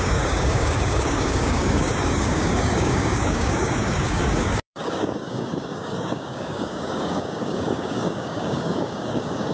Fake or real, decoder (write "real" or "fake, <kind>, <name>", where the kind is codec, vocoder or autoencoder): fake, codec, DAC